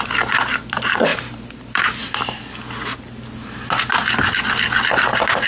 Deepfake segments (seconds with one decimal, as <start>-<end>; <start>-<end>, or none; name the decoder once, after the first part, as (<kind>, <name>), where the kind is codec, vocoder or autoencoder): 1.1-2.1 (vocoder, BigVGAN v2)